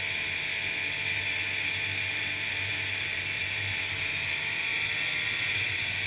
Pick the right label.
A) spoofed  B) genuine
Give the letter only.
B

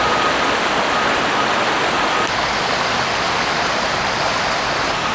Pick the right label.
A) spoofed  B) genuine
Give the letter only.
B